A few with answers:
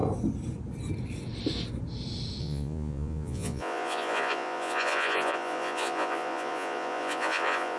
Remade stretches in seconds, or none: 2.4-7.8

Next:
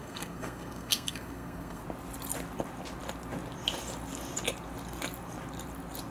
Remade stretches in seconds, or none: 0.0-1.8

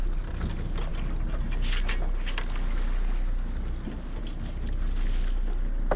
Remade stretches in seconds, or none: none